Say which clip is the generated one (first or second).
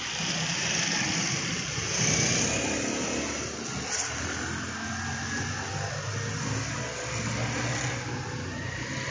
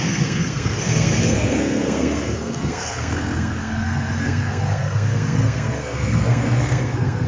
second